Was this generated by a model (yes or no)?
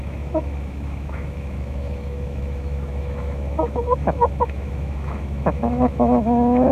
yes